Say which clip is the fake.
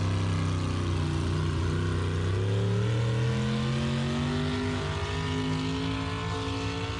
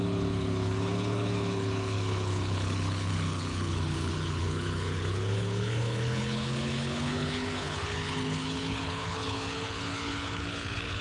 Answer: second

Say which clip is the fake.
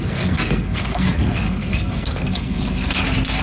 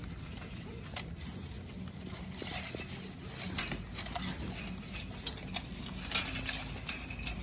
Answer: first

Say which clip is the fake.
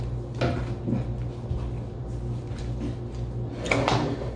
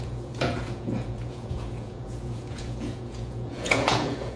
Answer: second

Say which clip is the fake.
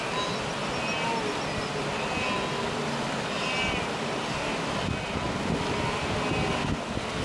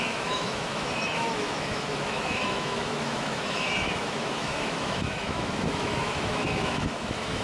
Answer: second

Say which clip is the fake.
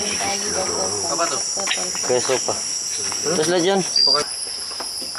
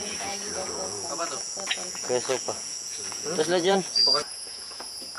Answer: second